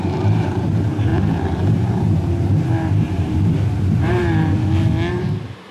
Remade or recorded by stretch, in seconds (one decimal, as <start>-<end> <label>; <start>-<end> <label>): 0.0-1.1 remade; 1.1-1.9 recorded; 1.9-4.2 remade; 4.2-5.1 recorded; 5.1-5.7 remade